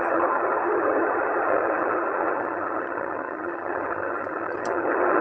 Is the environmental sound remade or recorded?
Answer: remade